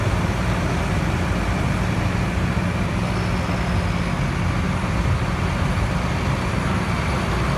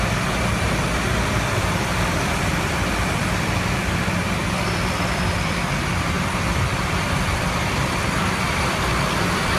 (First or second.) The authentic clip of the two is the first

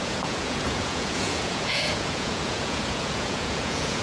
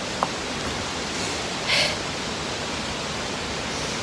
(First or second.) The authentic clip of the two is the second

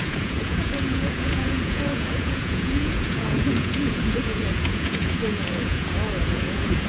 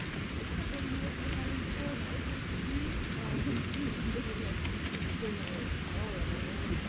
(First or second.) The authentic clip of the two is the second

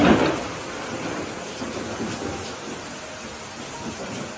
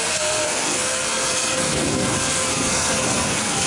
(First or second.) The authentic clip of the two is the first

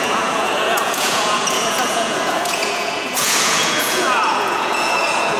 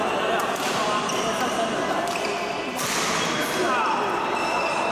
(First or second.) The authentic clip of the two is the second